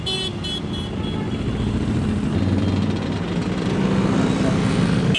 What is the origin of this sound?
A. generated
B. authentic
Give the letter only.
B